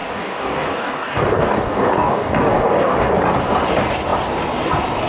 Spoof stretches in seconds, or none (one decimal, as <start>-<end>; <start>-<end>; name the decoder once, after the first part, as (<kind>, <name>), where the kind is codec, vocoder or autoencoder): 0.0-3.1 (codec, DAC)